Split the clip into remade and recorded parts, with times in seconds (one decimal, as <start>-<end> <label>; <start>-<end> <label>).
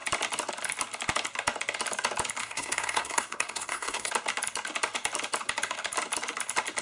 0.0-2.4 recorded; 2.4-4.1 remade; 4.1-6.8 recorded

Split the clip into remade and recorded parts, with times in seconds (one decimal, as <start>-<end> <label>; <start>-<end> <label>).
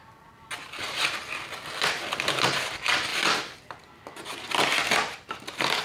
0.0-5.8 recorded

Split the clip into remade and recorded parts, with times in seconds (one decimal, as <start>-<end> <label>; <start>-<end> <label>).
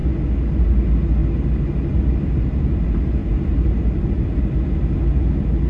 0.0-5.7 recorded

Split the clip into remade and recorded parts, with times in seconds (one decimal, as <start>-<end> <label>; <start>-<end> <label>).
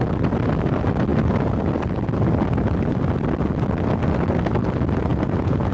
0.0-5.1 recorded; 5.1-5.7 remade